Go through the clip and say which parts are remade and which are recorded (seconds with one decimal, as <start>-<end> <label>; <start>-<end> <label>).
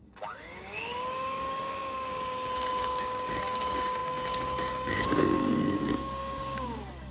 0.0-7.1 remade